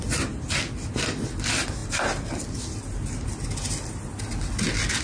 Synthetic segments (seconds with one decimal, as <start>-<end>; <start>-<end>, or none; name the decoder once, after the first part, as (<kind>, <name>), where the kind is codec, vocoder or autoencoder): none